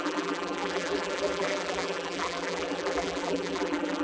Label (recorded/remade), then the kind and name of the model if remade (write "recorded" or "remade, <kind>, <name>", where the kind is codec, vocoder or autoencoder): remade, vocoder, BigVGAN v2